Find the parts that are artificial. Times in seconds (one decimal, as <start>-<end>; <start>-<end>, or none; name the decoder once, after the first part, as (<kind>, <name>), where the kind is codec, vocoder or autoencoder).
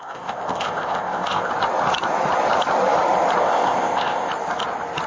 0.0-1.5 (codec, ZipCodec); 3.4-4.3